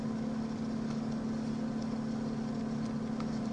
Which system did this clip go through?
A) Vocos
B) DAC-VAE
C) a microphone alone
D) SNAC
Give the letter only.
C